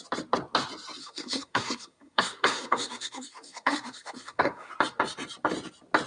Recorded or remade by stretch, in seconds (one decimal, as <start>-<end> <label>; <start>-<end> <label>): 0.0-1.0 recorded; 1.0-4.7 remade; 4.7-6.1 recorded